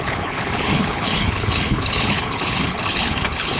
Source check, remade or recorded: remade